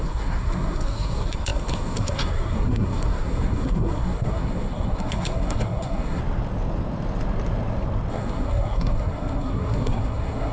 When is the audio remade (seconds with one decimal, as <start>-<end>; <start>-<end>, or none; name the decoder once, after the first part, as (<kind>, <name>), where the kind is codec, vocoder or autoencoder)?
0.0-6.2 (codec, SNAC); 8.1-10.5